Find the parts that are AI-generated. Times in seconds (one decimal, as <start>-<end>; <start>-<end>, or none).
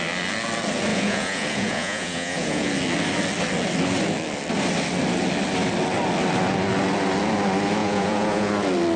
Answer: 0.9-2.7; 7.8-8.5